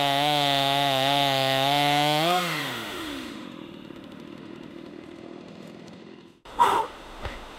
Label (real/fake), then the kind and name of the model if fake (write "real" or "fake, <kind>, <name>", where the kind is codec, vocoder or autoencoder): fake, autoencoder, DAC-VAE